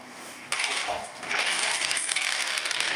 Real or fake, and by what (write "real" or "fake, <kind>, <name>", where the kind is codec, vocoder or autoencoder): fake, codec, DAC